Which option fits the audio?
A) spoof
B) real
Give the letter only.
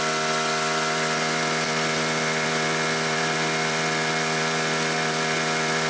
A